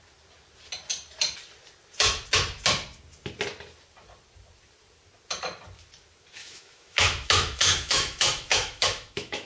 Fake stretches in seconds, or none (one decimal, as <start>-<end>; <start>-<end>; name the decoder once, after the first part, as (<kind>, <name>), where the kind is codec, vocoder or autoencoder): 6.4-9.5 (autoencoder, DAC-VAE)